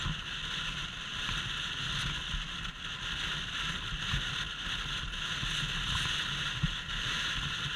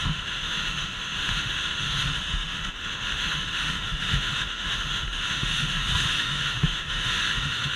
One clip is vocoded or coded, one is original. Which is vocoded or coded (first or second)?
second